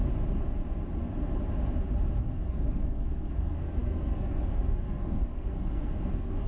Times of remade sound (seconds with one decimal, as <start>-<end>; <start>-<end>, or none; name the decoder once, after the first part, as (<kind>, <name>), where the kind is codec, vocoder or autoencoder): 2.2-6.5 (codec, SNAC)